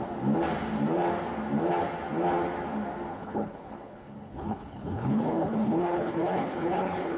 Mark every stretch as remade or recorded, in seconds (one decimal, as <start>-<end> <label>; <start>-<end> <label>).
0.0-3.1 recorded; 3.1-7.2 remade